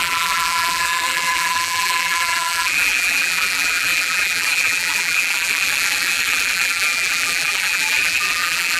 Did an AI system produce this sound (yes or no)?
yes